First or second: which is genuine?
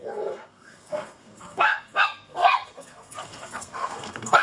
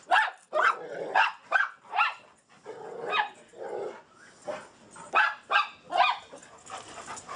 second